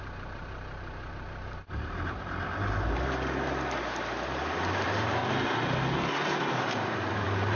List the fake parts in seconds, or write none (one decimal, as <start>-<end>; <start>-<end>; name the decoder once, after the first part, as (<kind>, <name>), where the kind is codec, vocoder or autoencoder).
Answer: 0.0-5.2 (vocoder, BigVGAN v2); 6.4-7.6